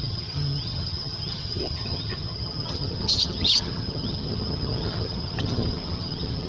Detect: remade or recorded remade